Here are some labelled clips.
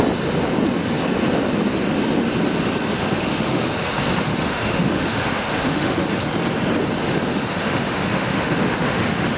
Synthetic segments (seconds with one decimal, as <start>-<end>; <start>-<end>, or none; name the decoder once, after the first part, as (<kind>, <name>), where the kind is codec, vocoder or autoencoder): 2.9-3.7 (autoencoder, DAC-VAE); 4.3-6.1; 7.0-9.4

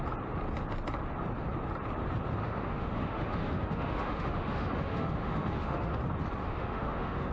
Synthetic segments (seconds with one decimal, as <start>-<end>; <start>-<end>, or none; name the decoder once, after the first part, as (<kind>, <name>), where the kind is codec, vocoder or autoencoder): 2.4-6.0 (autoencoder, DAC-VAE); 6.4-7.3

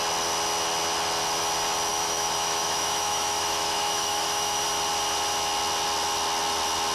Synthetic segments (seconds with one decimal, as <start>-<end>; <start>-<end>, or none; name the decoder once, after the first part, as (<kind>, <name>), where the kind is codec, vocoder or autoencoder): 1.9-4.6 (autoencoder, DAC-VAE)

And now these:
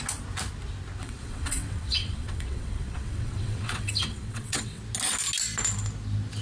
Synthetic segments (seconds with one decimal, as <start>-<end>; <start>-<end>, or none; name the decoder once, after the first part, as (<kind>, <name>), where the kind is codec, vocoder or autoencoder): 1.0-4.8 (vocoder, WaveNeXt)

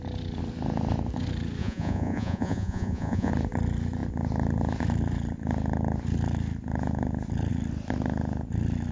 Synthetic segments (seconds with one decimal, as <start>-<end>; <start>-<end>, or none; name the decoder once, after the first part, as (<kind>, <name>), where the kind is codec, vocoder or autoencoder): 1.6-3.3 (vocoder, Vocos)